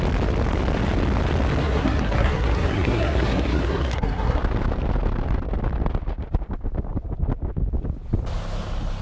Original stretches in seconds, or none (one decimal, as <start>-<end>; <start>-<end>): 0.0-1.6; 4.4-9.0